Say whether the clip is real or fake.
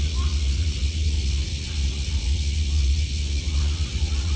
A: fake